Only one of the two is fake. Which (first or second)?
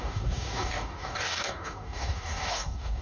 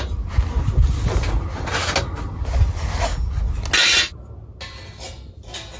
first